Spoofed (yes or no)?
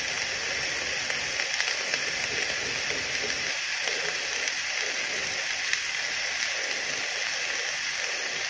no